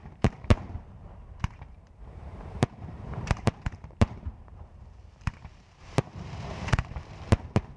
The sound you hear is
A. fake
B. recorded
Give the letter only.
A